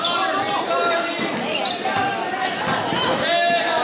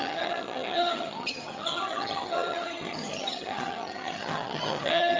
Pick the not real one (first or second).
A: second